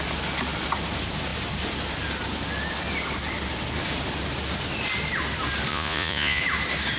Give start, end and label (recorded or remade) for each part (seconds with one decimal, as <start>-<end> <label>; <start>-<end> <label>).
0.0-5.7 recorded; 5.7-6.4 remade; 6.4-7.0 recorded